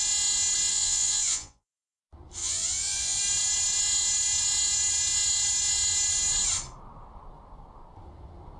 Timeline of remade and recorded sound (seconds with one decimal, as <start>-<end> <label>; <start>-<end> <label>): 0.0-0.7 recorded; 0.7-2.0 remade; 2.0-2.4 recorded; 2.4-3.2 remade; 3.2-8.6 recorded

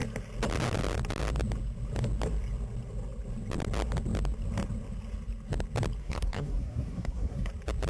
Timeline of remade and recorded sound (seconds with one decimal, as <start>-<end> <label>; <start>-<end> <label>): 0.0-6.0 recorded; 6.0-7.5 remade; 7.5-7.9 recorded